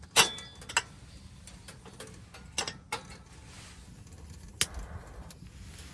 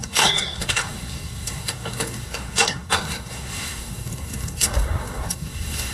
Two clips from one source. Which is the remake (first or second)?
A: second